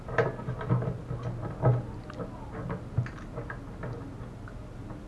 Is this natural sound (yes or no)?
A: yes